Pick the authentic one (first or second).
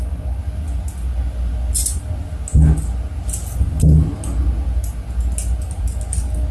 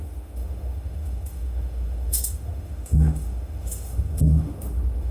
first